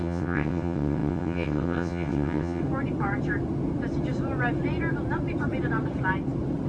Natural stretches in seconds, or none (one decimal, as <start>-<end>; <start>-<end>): 2.6-6.7